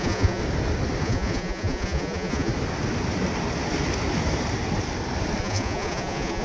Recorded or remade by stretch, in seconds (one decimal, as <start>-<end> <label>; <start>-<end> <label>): 0.0-0.4 remade; 0.4-1.0 recorded; 1.0-2.5 remade; 2.5-5.4 recorded; 5.4-6.4 remade